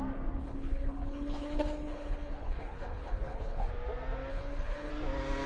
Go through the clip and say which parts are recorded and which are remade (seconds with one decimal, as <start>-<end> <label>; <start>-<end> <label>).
0.0-0.4 recorded; 0.4-3.7 remade; 3.7-4.3 recorded; 4.3-4.9 remade; 4.9-5.5 recorded